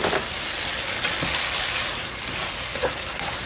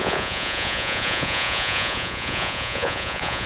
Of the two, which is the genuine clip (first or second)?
first